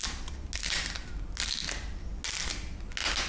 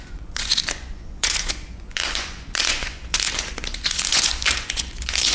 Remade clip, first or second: second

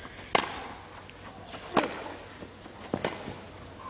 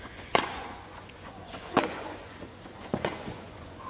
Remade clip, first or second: second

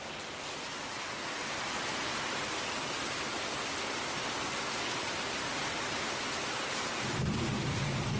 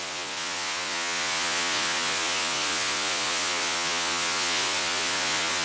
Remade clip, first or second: second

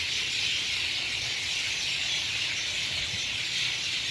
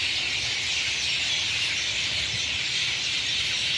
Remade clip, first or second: first